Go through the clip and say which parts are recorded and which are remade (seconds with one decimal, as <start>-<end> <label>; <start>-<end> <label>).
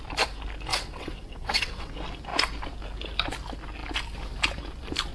0.0-0.7 recorded; 0.7-1.9 remade; 1.9-5.1 recorded